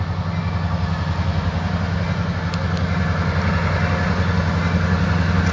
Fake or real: real